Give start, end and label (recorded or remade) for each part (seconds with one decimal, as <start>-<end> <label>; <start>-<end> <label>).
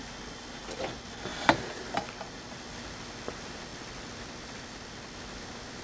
0.0-1.3 recorded; 1.3-2.6 remade; 2.6-3.7 recorded; 3.7-4.6 remade; 4.6-5.8 recorded